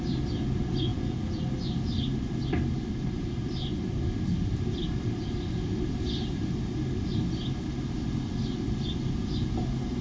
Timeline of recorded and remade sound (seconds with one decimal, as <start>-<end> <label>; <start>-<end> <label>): 0.0-0.9 recorded; 0.9-1.4 remade; 1.4-10.0 recorded